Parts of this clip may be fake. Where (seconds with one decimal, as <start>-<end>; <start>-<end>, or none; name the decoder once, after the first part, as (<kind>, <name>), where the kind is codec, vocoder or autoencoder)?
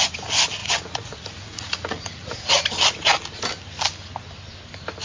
0.6-2.5 (vocoder, Vocos)